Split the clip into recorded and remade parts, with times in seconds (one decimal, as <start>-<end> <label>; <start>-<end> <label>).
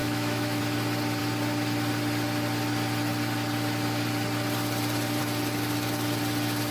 0.0-0.6 remade; 0.6-6.7 recorded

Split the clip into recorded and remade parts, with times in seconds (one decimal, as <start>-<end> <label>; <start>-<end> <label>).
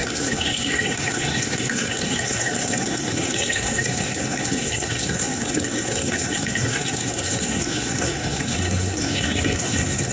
0.0-10.1 remade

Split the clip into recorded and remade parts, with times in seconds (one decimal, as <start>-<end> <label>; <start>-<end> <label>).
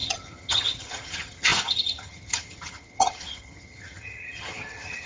0.0-5.1 remade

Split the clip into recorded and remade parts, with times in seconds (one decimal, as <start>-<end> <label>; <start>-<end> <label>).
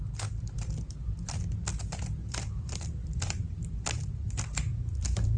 0.0-2.2 recorded; 2.2-5.4 remade